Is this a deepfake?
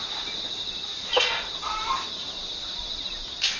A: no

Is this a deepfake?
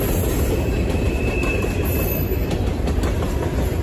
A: no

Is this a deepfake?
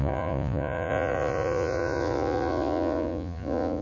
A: yes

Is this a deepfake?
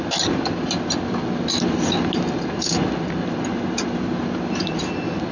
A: no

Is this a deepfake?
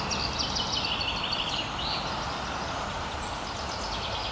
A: no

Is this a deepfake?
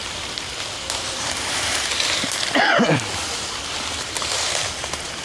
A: yes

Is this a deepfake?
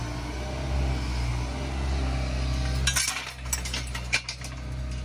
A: no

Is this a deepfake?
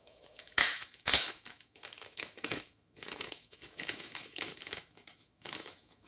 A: yes